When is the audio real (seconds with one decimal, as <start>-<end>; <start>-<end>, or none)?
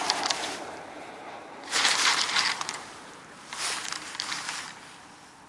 3.3-5.5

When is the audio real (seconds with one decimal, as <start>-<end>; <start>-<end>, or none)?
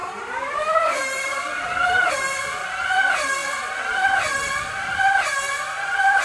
2.1-6.2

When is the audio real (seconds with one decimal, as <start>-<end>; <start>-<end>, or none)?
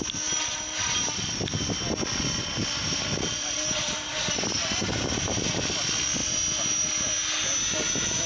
0.0-2.8; 5.5-8.3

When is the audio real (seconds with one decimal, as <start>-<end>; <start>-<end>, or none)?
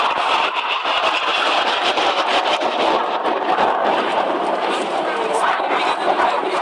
0.0-1.3; 2.6-3.8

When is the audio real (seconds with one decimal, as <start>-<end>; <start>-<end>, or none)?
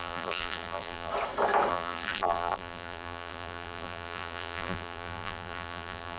1.1-1.7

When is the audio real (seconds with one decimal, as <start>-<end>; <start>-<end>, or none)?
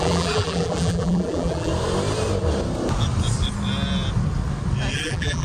1.7-4.9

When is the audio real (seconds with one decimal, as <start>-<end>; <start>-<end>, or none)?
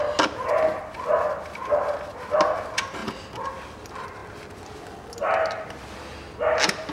0.0-6.9